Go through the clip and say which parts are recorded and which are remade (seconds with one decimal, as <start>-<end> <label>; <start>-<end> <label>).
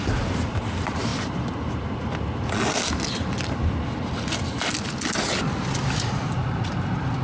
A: 0.0-1.1 remade; 1.1-5.4 recorded; 5.4-7.2 remade